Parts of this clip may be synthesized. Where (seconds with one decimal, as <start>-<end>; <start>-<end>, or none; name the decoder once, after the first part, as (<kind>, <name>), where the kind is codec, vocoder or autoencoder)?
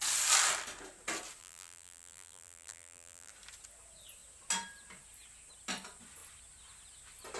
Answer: 1.4-3.3 (vocoder, BigVGAN v2)